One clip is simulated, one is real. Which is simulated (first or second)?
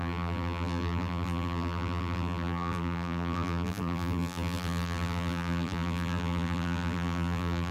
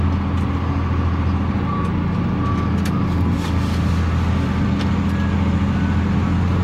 first